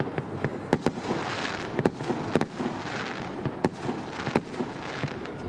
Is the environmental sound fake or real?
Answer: real